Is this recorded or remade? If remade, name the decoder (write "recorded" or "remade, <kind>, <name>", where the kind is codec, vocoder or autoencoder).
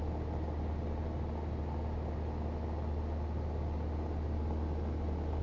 recorded